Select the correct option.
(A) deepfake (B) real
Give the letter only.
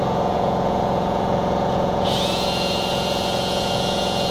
A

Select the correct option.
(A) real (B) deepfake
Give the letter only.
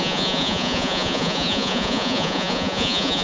B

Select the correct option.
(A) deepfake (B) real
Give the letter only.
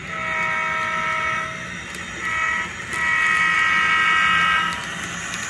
B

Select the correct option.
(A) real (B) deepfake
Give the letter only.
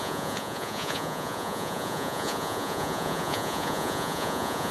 B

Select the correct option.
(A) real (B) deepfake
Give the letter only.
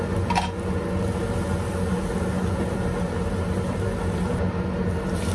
A